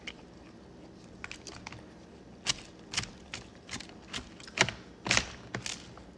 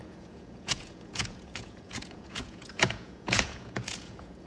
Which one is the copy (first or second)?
second